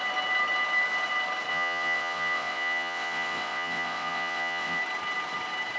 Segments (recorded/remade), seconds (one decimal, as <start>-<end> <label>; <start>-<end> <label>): 0.0-1.5 recorded; 1.5-4.8 remade; 4.8-5.8 recorded